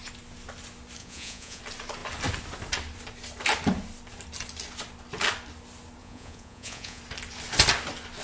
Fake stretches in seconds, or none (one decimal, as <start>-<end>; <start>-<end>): 1.0-1.6; 6.0-7.0